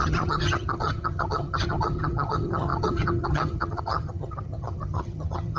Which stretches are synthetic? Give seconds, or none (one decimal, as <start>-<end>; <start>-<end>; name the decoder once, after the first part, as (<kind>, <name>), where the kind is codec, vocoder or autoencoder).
0.0-5.6 (vocoder, HiFi-GAN)